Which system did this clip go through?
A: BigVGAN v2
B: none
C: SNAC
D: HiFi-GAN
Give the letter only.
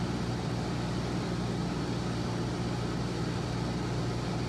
B